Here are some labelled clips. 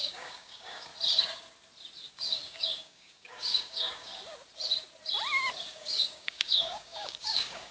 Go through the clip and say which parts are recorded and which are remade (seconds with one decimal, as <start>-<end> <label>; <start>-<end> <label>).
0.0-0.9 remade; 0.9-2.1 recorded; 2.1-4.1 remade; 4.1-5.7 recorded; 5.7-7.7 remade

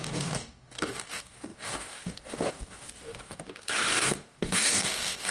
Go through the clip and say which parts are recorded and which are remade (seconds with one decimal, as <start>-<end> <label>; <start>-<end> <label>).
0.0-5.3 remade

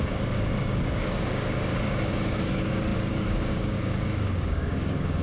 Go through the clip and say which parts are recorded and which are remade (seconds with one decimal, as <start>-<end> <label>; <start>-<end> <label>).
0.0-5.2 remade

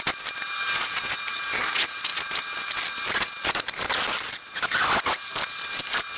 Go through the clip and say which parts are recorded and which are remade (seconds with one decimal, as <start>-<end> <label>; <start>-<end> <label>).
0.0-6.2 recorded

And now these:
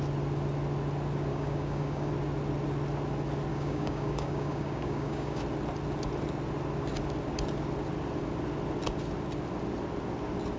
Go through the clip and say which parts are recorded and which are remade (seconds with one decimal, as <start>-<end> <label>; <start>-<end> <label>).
0.0-1.3 recorded; 1.3-2.1 remade; 2.1-3.5 recorded; 3.5-5.4 remade; 5.4-10.6 recorded

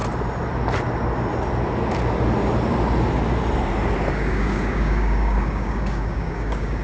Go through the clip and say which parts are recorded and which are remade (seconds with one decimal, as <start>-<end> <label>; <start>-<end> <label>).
0.0-4.1 recorded; 4.1-6.8 remade